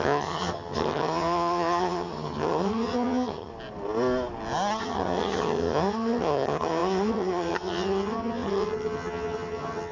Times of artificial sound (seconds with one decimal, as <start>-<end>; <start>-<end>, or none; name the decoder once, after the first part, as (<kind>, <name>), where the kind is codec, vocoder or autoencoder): 0.0-3.5 (vocoder, HiFi-GAN); 4.8-9.9